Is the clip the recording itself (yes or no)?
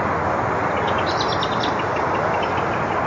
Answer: yes